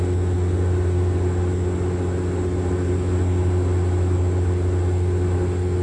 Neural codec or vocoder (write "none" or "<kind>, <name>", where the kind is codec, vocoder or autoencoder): none